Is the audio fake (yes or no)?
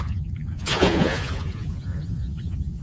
yes